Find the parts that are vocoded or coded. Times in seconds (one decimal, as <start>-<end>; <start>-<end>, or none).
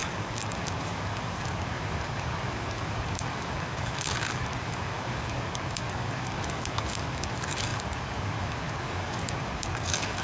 0.0-10.2